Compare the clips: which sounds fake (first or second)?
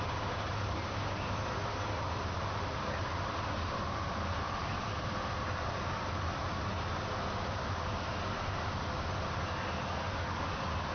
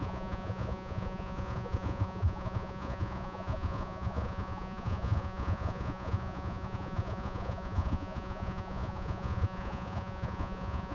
second